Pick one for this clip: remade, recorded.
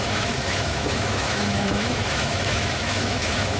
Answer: remade